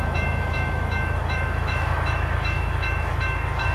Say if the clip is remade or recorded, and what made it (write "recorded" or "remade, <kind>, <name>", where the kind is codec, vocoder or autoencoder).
remade, autoencoder, DAC-VAE